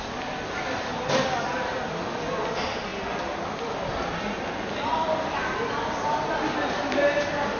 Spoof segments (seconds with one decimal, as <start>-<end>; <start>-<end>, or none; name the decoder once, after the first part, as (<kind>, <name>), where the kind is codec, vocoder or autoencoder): none